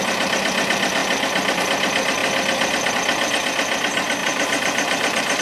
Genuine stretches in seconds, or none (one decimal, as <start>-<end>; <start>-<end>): 0.0-4.2